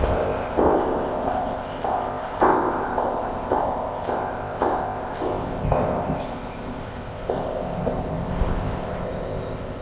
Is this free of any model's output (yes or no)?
no